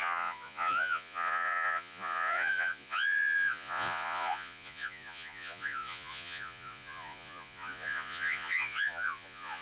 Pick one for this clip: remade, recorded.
remade